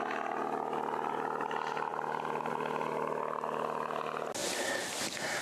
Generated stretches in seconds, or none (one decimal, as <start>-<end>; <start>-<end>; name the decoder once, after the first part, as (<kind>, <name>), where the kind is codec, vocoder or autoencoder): none